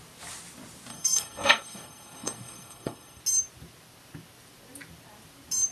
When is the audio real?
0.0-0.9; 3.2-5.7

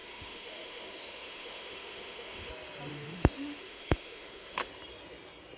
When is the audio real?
2.5-2.9; 4.7-5.6

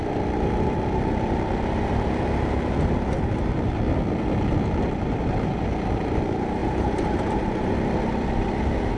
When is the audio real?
0.0-6.6; 7.7-9.0